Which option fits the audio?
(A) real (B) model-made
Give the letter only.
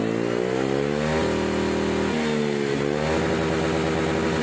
A